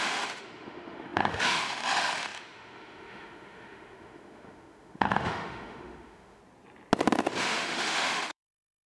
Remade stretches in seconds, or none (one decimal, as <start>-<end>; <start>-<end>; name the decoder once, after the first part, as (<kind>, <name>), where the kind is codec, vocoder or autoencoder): 0.0-6.4 (autoencoder, DAC-VAE); 7.4-8.9